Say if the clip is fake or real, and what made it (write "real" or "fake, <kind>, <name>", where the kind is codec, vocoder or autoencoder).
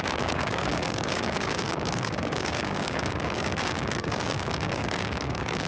fake, codec, DAC